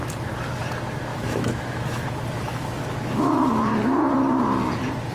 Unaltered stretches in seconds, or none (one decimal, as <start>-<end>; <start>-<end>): 0.0-1.1; 2.0-2.5; 3.7-5.1